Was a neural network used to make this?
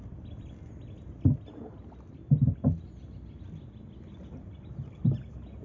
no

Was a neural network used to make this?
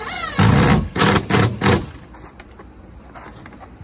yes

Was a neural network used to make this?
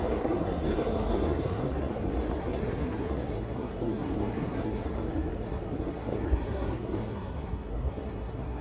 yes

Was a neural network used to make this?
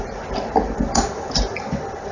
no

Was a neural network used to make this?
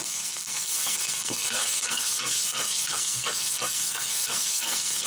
yes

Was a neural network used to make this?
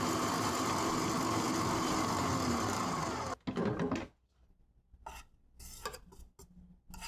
no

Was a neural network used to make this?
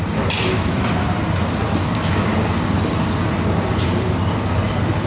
yes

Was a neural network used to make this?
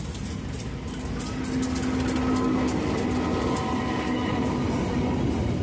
no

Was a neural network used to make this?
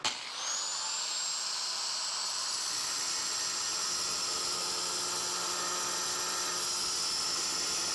no